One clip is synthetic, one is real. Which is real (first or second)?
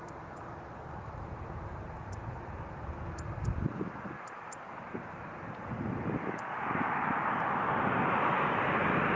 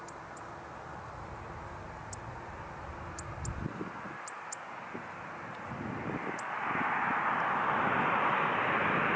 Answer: second